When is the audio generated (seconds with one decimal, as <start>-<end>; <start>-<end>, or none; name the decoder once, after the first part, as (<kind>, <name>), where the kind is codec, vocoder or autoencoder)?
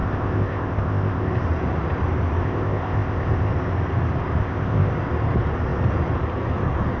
0.0-1.3 (codec, ZipCodec); 2.4-3.5; 4.4-4.9